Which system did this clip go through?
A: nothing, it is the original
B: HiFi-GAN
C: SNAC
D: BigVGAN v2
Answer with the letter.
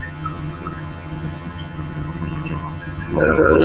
B